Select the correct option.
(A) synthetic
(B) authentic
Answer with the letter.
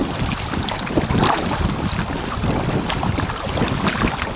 B